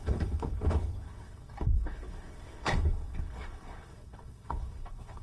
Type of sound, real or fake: fake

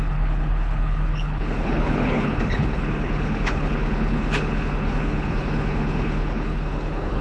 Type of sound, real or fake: fake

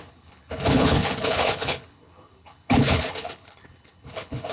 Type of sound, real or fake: fake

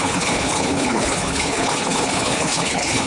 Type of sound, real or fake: fake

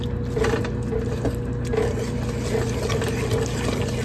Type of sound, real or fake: real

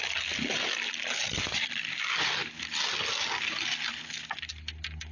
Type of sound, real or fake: real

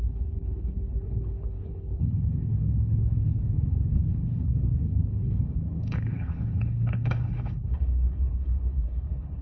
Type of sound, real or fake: fake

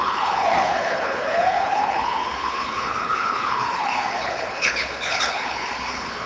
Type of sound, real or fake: fake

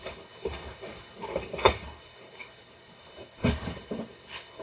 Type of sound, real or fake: fake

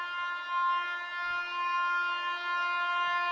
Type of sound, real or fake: real